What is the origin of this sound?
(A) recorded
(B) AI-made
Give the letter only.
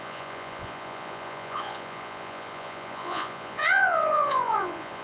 B